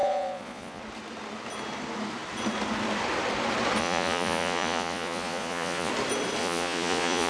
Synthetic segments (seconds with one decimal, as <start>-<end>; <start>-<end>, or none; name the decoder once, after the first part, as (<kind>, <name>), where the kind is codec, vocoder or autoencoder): 0.0-0.8 (vocoder, Vocos); 3.8-5.9; 6.4-7.3